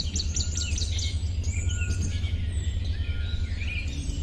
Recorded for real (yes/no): yes